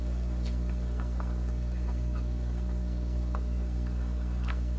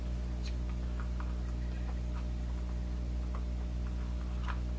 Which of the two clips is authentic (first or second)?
second